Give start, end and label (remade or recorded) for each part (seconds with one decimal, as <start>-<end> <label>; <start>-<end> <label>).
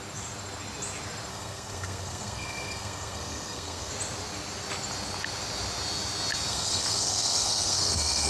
0.0-1.3 recorded; 1.3-3.9 remade; 3.9-6.5 recorded; 6.5-8.3 remade